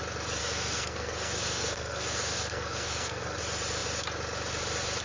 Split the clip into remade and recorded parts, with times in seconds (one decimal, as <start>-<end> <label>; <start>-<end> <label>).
0.0-0.4 recorded; 0.4-3.4 remade; 3.4-5.0 recorded